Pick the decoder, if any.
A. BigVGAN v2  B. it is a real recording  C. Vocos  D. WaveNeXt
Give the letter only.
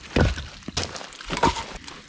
B